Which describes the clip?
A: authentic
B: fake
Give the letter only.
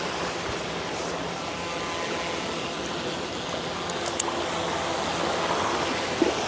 A